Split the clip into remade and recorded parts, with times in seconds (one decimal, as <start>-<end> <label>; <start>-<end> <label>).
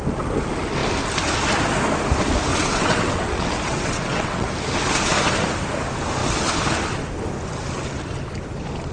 0.0-2.5 recorded; 2.5-4.5 remade; 4.5-8.9 recorded